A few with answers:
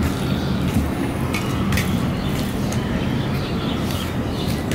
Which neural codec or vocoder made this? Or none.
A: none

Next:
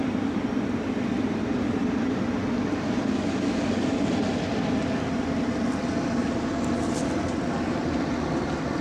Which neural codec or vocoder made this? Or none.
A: none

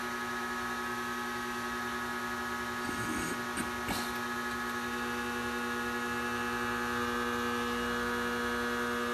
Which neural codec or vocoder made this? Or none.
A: none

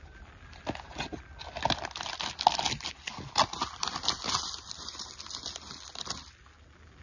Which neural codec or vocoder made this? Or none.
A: none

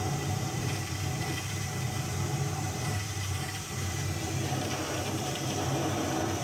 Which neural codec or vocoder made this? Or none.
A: vocoder, BigVGAN v2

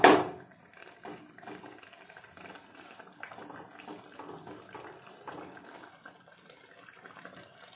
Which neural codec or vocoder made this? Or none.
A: none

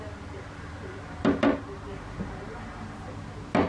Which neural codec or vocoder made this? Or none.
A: none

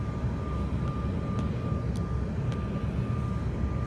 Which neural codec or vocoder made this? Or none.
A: none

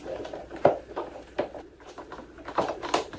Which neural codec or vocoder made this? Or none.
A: vocoder, BigVGAN v2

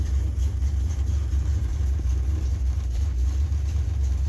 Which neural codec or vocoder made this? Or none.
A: vocoder, BigVGAN v2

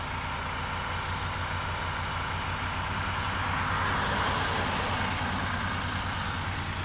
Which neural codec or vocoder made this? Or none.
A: none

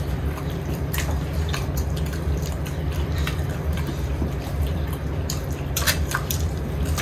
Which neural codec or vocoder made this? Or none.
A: vocoder, BigVGAN v2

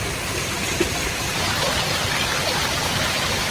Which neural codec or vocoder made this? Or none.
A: none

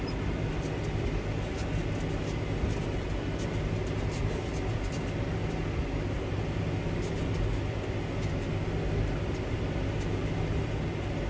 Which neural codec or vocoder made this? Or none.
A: none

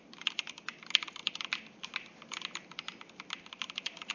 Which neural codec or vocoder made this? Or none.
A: none